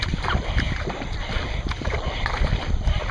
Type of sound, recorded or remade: recorded